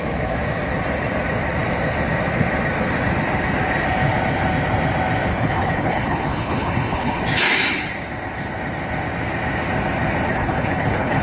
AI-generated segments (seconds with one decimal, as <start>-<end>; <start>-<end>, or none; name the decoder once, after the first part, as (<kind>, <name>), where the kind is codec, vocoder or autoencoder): 5.3-7.2 (codec, HILCodec); 10.3-11.2